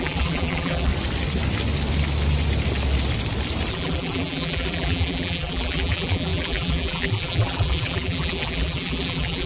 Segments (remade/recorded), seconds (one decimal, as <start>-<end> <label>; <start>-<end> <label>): 0.0-0.9 remade; 0.9-3.7 recorded; 3.7-9.5 remade